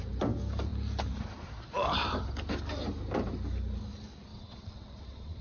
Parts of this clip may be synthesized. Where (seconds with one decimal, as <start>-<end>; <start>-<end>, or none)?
4.3-5.4